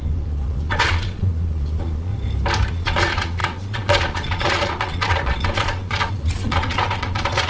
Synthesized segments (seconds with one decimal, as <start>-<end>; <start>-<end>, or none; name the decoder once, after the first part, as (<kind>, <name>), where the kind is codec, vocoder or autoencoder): 0.0-2.1 (vocoder, Vocos); 2.7-7.5